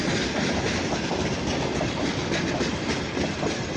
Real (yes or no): yes